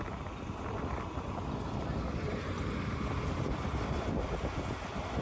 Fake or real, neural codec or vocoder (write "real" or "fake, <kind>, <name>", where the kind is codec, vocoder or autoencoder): real